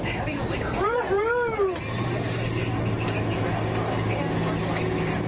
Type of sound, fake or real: real